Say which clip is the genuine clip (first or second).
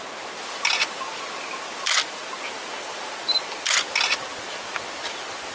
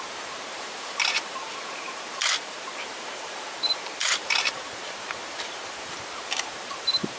first